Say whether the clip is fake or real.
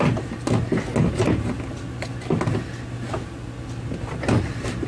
real